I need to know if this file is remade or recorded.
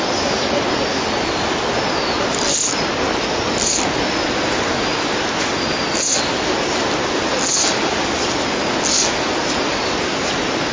recorded